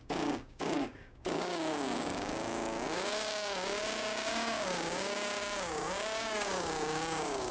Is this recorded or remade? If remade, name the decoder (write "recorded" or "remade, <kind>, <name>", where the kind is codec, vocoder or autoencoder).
remade, codec, DAC